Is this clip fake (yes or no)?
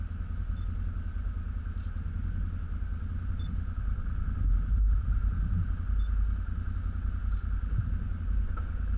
no